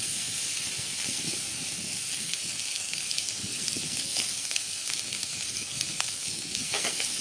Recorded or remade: remade